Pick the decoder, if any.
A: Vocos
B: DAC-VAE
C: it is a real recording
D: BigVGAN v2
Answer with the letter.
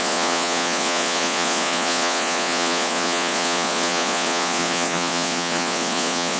A